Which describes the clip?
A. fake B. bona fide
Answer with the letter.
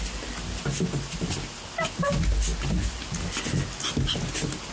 B